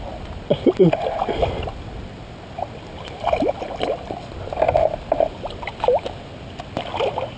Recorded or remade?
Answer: recorded